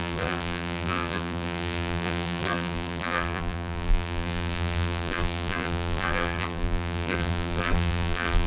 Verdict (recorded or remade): remade